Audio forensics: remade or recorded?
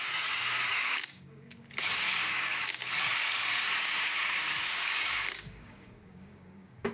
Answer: remade